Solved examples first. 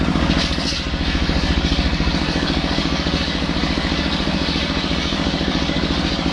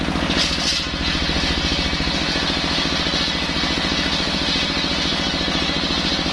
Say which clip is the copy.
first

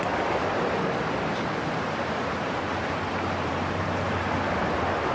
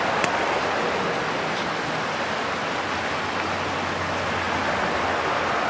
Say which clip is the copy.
first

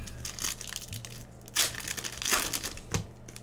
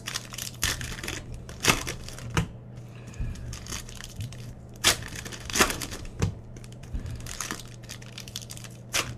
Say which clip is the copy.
second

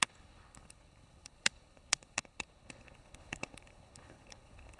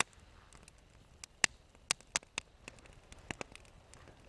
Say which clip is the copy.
first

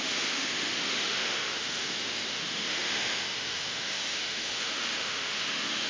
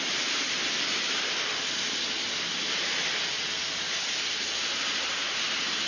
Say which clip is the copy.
first